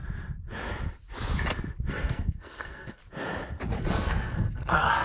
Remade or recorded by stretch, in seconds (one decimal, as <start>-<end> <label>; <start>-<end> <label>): 0.0-1.9 recorded; 1.9-3.0 remade; 3.0-3.8 recorded; 3.8-5.0 remade